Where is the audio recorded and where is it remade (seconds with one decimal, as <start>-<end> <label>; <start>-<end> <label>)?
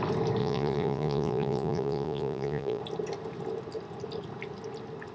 0.0-0.4 recorded; 0.4-2.8 remade; 2.8-5.1 recorded